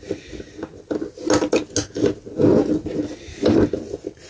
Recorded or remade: recorded